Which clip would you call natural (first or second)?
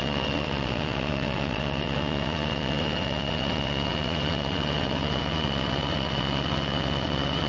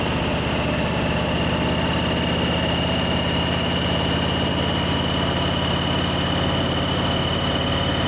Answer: second